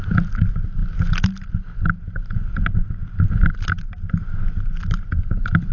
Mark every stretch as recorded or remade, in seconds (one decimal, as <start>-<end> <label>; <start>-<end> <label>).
0.0-5.7 recorded